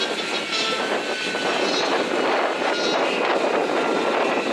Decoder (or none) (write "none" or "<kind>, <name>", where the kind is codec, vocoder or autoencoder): none